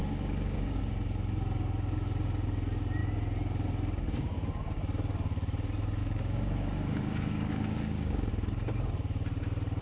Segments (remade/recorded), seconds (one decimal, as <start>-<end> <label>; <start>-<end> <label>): 0.0-0.8 remade; 0.8-6.0 recorded; 6.0-8.3 remade; 8.3-9.8 recorded